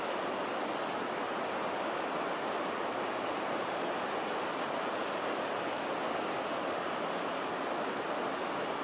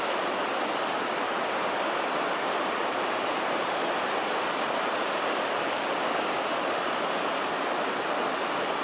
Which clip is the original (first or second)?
first